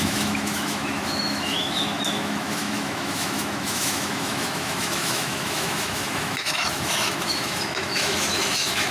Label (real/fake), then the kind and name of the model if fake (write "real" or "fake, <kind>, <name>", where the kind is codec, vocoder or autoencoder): fake, autoencoder, DAC-VAE